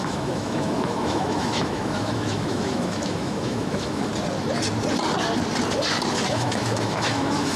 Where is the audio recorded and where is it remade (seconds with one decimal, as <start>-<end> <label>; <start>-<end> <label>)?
0.0-4.1 remade; 4.1-6.3 recorded; 6.3-7.6 remade